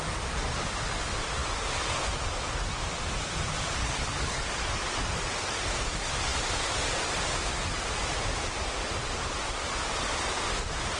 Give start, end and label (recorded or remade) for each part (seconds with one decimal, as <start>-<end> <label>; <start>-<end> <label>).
0.0-3.8 recorded; 3.8-4.5 remade; 4.5-11.0 recorded